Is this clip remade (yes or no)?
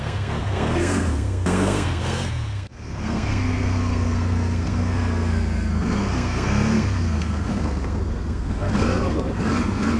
yes